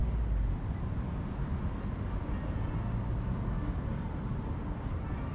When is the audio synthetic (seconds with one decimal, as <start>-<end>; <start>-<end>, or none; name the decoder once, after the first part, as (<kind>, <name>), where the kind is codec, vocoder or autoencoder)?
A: none